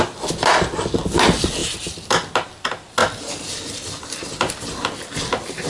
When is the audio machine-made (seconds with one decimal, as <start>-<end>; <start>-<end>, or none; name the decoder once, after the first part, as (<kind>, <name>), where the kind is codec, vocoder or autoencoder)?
1.6-2.3 (vocoder, BigVGAN v2); 3.0-4.5